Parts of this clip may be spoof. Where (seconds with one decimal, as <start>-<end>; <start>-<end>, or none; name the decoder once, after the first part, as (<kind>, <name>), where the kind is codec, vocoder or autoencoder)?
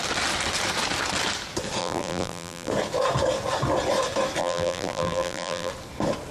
1.8-2.7 (vocoder, BigVGAN v2); 4.4-5.7